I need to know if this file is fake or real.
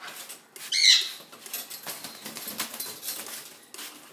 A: real